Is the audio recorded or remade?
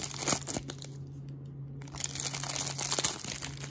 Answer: recorded